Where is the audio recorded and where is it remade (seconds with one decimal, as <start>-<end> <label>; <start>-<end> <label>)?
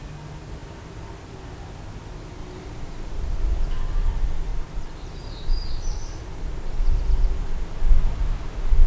0.0-2.4 recorded; 2.4-3.8 remade; 3.8-4.5 recorded; 4.5-6.7 remade; 6.7-8.9 recorded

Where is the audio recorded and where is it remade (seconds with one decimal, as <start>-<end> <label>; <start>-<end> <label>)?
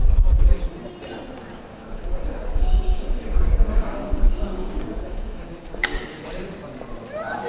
0.0-1.7 recorded; 1.7-6.2 remade; 6.2-7.5 recorded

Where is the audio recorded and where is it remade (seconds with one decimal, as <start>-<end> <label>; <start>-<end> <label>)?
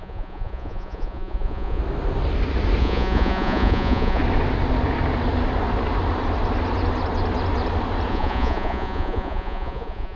0.0-1.8 remade; 1.8-2.8 recorded; 2.8-4.2 remade; 4.2-8.1 recorded; 8.1-10.2 remade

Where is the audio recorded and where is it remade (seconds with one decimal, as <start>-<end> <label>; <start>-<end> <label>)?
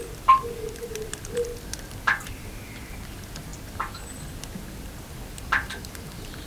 0.0-1.5 remade; 1.5-2.3 recorded; 2.3-3.5 remade; 3.5-5.0 recorded; 5.0-6.5 remade